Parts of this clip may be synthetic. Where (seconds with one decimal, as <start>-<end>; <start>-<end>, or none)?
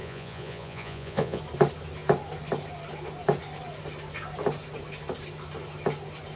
0.0-1.4